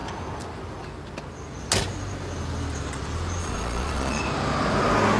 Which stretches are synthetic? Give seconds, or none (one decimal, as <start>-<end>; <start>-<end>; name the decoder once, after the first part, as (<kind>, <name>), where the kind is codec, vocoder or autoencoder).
3.4-4.2 (vocoder, Vocos)